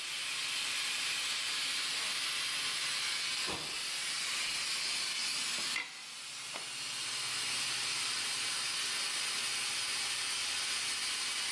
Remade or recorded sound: recorded